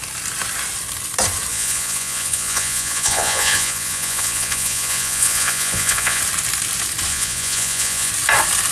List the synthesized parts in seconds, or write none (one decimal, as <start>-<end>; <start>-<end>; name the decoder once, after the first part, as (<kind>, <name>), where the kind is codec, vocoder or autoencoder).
1.5-6.2 (vocoder, Vocos); 7.1-8.1

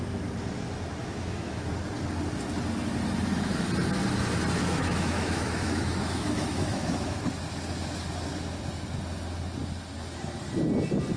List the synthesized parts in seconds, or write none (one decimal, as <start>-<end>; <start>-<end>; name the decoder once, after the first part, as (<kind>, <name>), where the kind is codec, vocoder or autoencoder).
1.0-1.7 (autoencoder, DAC-VAE); 4.6-7.2

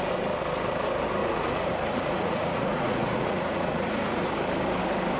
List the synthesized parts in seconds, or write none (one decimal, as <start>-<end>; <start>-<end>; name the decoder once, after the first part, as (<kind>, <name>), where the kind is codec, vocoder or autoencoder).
1.2-4.3 (vocoder, Vocos)